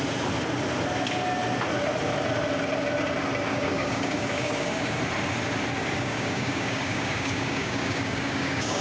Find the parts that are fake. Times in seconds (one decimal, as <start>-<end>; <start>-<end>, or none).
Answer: 3.5-5.0; 5.8-8.8